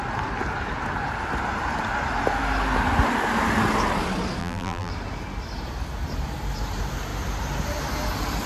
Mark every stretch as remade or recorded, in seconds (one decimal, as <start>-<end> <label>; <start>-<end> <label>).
0.0-4.4 recorded; 4.4-4.9 remade; 4.9-8.5 recorded